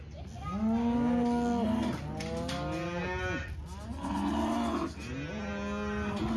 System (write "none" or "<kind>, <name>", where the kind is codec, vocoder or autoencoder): none